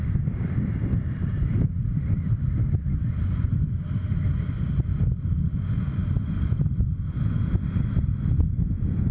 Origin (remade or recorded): recorded